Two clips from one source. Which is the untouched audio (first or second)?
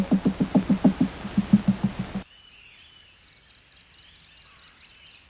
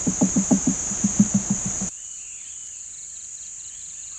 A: first